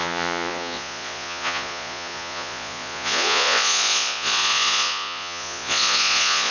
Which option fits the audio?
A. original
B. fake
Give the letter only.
B